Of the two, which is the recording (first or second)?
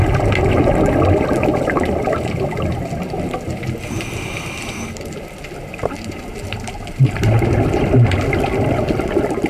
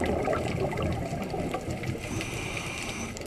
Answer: first